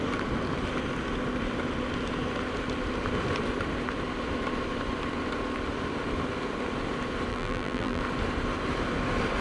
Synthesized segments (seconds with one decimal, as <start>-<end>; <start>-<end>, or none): 7.3-8.0